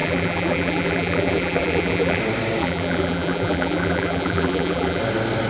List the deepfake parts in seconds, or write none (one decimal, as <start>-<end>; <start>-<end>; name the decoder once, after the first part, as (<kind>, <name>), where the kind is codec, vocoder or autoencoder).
0.0-2.2 (vocoder, BigVGAN v2); 2.6-5.0